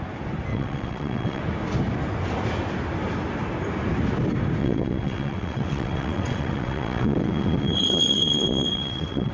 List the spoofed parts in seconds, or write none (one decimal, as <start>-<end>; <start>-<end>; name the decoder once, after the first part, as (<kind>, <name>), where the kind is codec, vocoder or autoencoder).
0.5-1.4 (vocoder, WaveNeXt); 4.6-9.3